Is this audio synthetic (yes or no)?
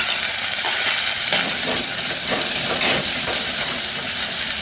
yes